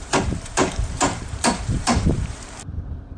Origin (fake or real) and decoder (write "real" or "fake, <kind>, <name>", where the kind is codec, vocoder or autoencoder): fake, vocoder, BigVGAN v2